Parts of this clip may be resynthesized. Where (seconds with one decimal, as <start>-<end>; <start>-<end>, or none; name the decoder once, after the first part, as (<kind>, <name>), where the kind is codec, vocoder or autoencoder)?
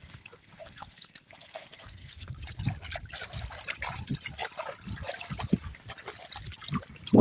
0.0-2.3 (codec, SNAC)